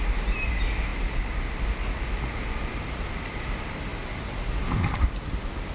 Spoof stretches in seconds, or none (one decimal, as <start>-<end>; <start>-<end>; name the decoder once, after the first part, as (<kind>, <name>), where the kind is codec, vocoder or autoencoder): none